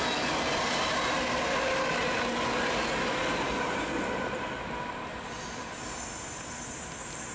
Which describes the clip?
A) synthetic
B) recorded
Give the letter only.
B